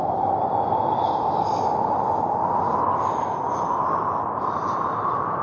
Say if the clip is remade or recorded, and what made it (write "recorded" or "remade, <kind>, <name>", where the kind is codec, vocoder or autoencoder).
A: recorded